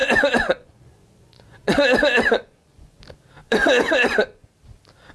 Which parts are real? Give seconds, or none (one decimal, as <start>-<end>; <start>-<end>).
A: 3.0-3.4; 4.5-5.1